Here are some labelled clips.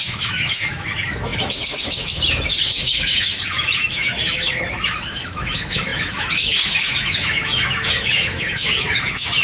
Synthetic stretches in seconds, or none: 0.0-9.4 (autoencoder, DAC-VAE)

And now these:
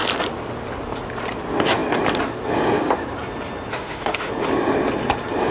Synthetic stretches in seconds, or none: 3.7-4.3 (autoencoder, DAC-VAE)

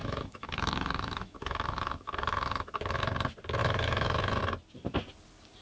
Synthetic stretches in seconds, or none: 0.0-3.0 (autoencoder, DAC-VAE); 3.6-4.4

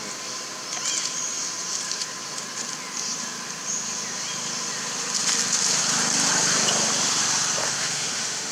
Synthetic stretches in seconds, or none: 7.6-8.5 (autoencoder, DAC-VAE)

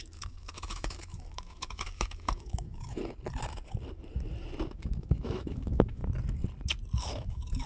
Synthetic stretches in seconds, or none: 0.0-3.0 (autoencoder, DAC-VAE); 4.7-6.0; 7.0-7.7